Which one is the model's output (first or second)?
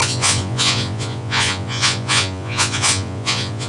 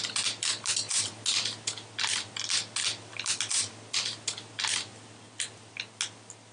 first